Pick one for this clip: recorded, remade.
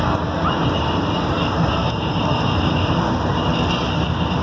remade